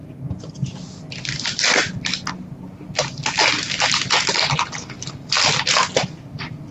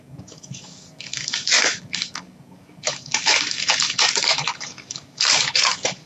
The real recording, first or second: first